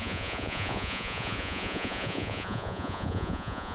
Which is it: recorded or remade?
remade